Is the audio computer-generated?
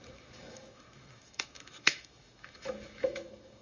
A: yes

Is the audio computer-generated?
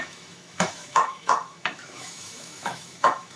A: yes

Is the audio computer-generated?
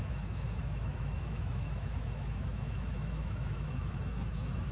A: yes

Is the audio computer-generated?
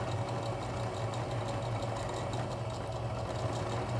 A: no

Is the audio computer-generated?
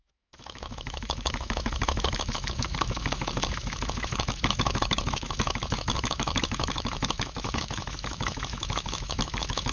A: yes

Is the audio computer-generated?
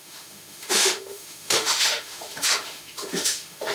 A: yes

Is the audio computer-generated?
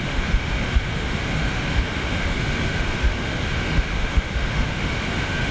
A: yes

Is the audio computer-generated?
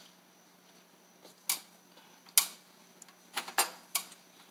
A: no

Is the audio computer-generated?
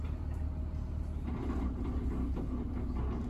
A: no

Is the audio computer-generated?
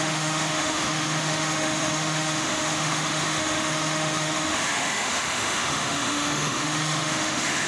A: yes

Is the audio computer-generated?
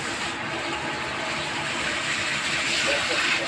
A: no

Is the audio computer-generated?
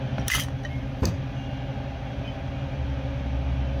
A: no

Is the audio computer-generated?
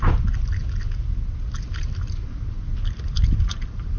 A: no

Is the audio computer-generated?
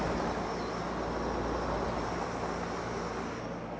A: no